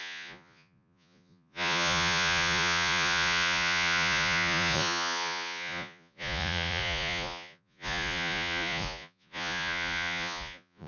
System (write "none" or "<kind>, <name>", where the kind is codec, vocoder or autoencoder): vocoder, Vocos